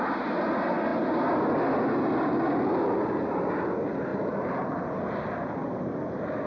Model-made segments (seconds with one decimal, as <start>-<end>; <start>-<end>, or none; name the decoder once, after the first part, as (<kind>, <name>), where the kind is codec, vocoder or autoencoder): none